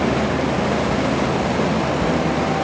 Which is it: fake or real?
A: real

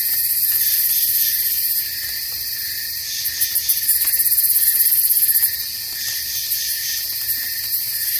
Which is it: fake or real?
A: fake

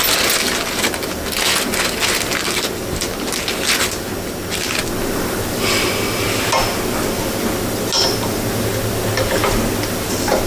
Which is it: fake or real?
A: real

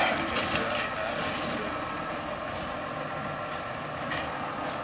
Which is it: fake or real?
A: real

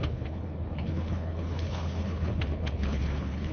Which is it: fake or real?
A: fake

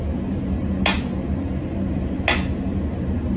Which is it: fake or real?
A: real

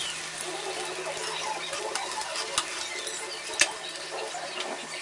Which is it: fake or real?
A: real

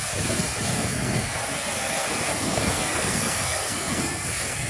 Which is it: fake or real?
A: fake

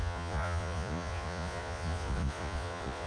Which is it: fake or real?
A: fake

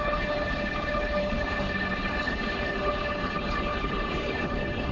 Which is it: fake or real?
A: fake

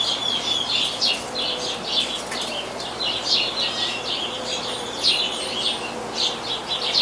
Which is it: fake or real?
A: real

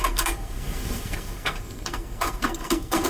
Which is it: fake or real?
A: fake